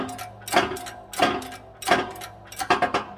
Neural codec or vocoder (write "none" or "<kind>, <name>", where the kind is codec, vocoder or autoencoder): none